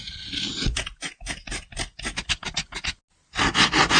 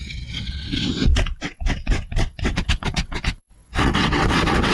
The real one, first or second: first